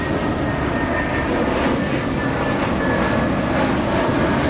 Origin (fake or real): real